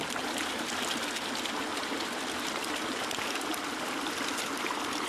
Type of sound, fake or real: real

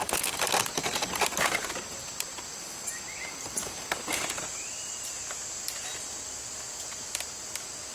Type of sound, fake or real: real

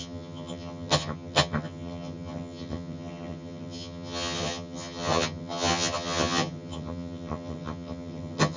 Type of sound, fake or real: fake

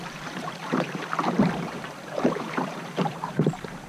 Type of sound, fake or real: fake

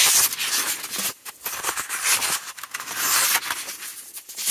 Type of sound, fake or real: real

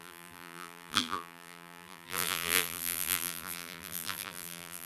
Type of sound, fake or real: fake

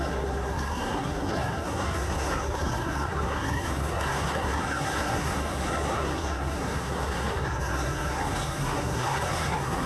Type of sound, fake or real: fake